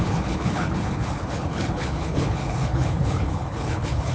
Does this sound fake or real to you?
fake